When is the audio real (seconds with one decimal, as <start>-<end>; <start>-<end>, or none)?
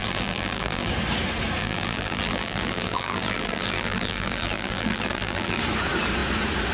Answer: 0.9-1.6; 5.6-6.7